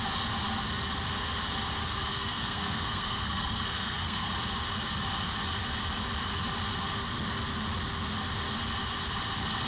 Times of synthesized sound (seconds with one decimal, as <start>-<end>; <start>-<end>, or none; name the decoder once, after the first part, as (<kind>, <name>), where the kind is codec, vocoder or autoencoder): 1.8-4.3 (codec, SNAC)